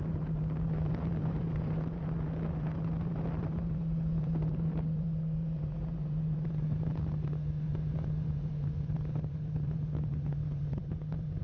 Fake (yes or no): yes